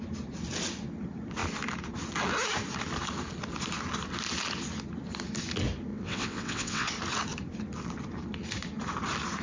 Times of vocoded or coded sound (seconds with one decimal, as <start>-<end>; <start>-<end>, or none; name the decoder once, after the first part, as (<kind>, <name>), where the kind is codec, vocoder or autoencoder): 5.9-6.9 (vocoder, WaveNeXt)